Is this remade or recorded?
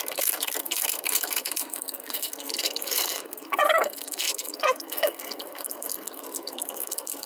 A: remade